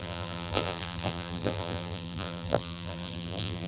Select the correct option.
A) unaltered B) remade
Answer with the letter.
B